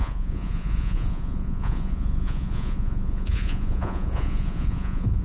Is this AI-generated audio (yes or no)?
yes